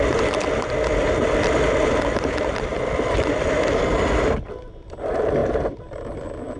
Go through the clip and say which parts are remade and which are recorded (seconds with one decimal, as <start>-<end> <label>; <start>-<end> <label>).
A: 0.0-6.6 recorded